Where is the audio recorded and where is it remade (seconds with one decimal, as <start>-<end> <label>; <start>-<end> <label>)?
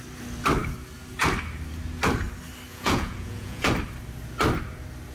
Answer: 0.0-2.7 recorded; 2.7-3.7 remade; 3.7-5.1 recorded